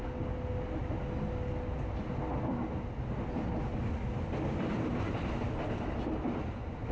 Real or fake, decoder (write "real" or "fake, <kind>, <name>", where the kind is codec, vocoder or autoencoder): real